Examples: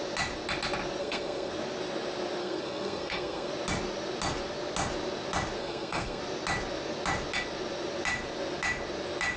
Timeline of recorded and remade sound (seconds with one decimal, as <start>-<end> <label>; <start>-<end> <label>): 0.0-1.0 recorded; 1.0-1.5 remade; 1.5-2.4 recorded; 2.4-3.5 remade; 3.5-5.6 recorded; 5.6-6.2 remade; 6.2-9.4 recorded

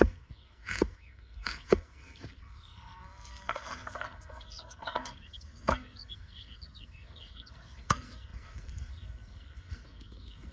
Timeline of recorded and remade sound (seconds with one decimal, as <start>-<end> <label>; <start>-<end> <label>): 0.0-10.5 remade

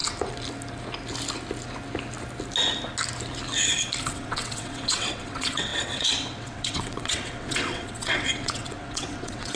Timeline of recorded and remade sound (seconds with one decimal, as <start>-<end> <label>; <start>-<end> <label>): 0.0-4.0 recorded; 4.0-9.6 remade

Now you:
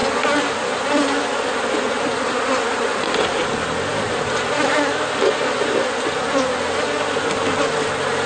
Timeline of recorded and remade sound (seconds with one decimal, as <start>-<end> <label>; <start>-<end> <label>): 0.0-8.3 recorded